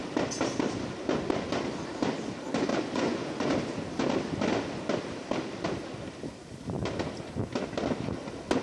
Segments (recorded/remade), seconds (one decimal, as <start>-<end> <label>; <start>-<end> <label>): 0.0-2.7 recorded; 2.7-3.5 remade; 3.5-8.6 recorded